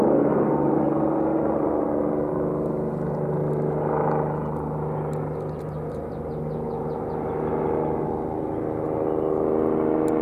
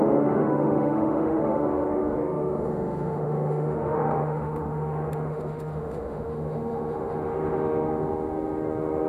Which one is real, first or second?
first